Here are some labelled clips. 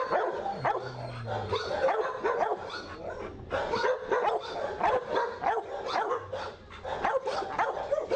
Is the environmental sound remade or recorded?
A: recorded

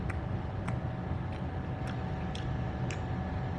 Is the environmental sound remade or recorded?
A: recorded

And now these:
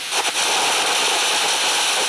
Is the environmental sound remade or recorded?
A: recorded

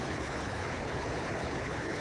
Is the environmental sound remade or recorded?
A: remade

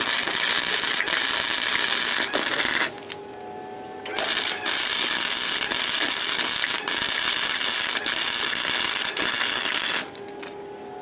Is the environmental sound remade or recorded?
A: recorded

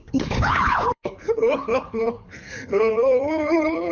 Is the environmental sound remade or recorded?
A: remade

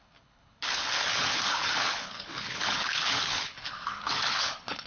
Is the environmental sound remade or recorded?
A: remade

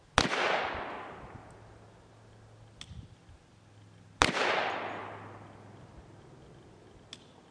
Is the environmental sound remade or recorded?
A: recorded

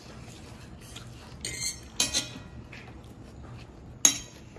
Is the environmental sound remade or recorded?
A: recorded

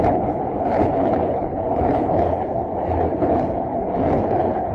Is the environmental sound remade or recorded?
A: remade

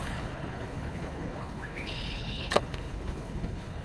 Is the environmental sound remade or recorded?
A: remade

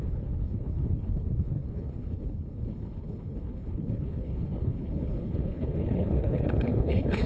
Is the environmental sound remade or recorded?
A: remade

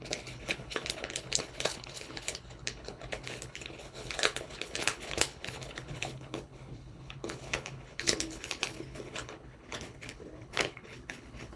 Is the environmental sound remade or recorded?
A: remade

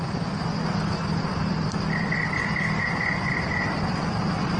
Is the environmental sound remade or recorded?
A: recorded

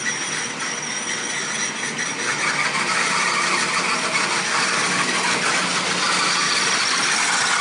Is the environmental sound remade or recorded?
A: recorded